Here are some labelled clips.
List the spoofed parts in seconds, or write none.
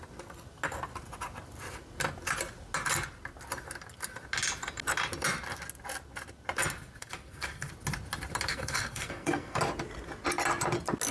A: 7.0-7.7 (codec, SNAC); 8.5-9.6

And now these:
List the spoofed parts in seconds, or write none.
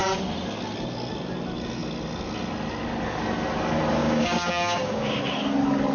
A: 4.0-5.2 (codec, DAC)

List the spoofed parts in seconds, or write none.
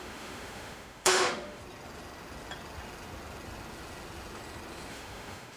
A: 0.0-1.6 (autoencoder, DAC-VAE); 4.9-5.6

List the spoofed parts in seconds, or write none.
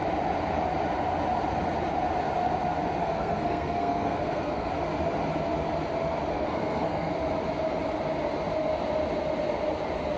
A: 3.0-4.7 (codec, SNAC); 6.3-7.1